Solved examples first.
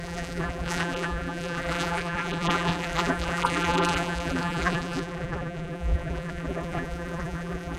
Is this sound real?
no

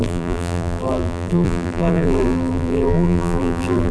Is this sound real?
no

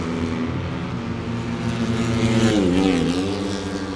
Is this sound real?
yes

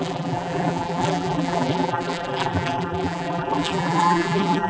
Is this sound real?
no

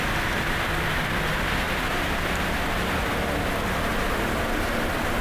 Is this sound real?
yes